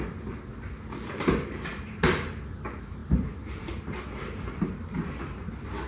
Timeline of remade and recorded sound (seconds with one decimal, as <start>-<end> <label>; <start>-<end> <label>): 0.0-0.5 remade; 0.5-1.4 recorded; 1.4-5.9 remade